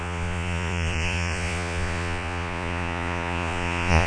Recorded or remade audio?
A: remade